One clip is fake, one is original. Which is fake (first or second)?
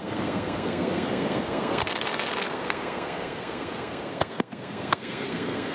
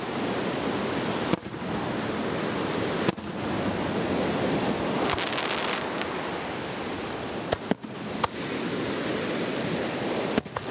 first